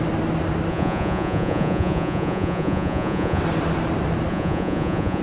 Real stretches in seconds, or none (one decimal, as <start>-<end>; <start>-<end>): 0.0-0.7; 3.4-4.3

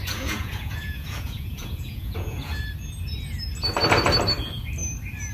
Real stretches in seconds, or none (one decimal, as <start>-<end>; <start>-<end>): 2.6-5.3

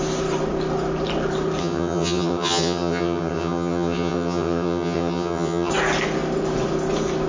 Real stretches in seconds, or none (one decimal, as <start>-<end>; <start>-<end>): 0.0-1.6; 5.7-7.3

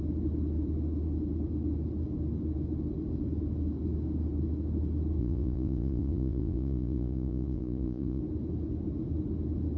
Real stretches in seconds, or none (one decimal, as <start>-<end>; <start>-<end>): 0.0-5.2; 8.2-9.8

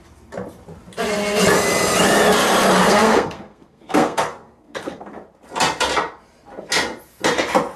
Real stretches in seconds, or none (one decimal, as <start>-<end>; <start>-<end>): 0.0-2.8; 5.1-7.8

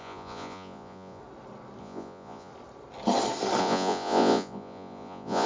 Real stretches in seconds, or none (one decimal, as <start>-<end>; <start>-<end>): 1.2-1.8; 2.5-3.6

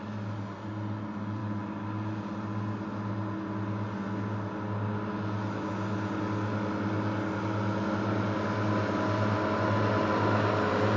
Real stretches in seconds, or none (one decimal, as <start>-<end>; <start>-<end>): 0.0-11.0